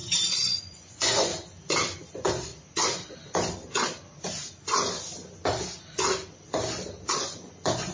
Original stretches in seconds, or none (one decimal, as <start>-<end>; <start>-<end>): 0.0-0.6; 1.3-2.1; 2.5-7.2